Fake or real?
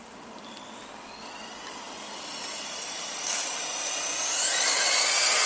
real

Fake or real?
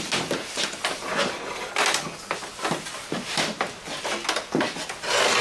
real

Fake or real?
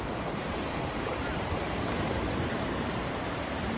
fake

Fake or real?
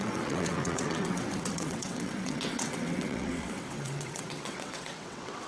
fake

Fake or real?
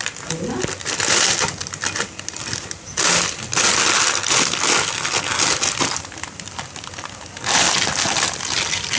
real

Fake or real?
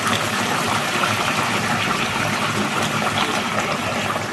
fake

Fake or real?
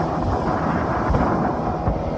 real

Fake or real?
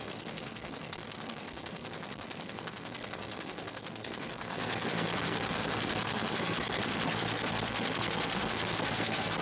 fake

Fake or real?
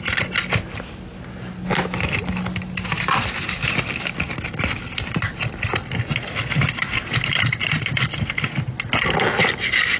real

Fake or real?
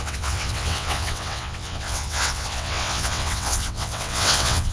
fake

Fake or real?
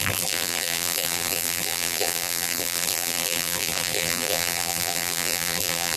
fake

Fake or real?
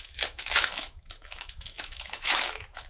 fake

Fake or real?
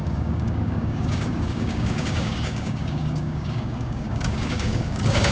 fake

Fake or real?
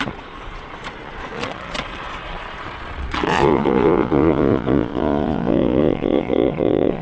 fake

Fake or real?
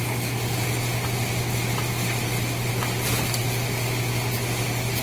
real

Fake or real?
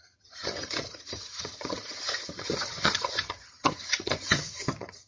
fake